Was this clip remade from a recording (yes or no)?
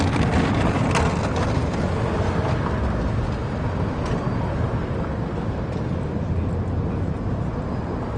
no